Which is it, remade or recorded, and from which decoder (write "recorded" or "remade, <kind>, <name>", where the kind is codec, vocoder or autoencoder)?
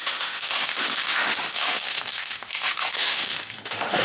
remade, autoencoder, DAC-VAE